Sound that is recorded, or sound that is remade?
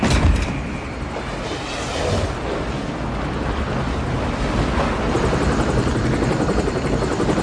recorded